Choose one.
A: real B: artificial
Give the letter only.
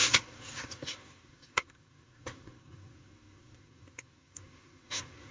B